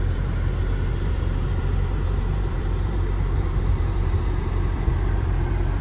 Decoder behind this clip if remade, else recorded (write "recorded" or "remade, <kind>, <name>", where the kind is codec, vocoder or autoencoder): remade, vocoder, BigVGAN v2